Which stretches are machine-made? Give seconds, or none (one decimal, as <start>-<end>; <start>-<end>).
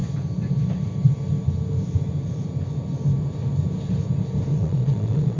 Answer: 4.5-5.4